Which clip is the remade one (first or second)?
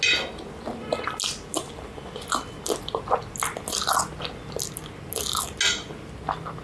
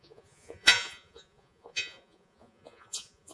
second